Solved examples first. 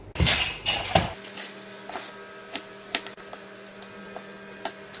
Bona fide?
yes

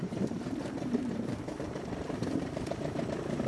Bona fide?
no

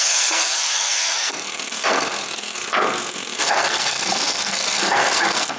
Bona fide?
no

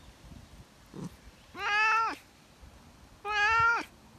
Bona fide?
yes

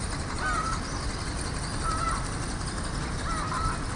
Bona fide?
yes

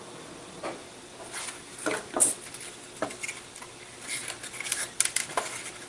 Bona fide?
yes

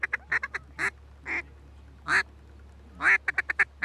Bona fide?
yes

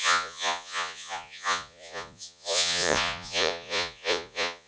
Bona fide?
no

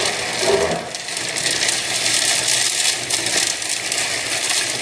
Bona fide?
yes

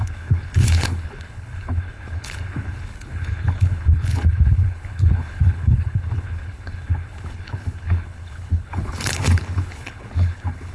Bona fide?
no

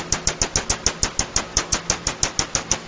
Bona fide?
yes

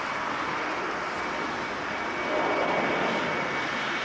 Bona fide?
yes